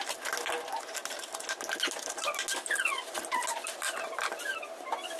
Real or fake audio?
real